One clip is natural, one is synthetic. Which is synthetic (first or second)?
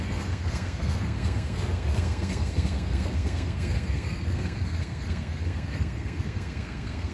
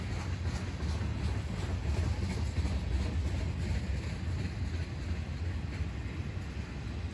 first